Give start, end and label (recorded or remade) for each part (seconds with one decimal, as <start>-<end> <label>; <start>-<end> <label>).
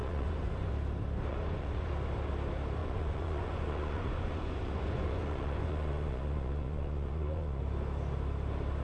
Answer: 0.0-0.7 remade; 0.7-1.3 recorded; 1.3-1.9 remade; 1.9-2.8 recorded; 2.8-7.6 remade; 7.6-8.8 recorded